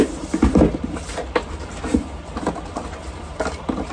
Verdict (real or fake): real